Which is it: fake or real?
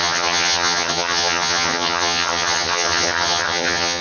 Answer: fake